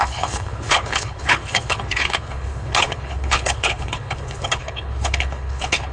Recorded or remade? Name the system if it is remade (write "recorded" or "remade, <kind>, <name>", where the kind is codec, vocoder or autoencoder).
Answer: remade, codec, HILCodec